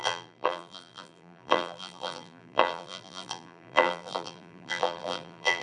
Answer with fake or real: fake